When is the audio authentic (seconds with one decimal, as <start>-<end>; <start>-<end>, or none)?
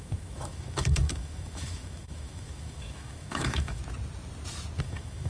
3.8-4.8